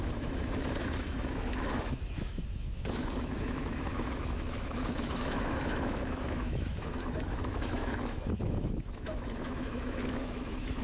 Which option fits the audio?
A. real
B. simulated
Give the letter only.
B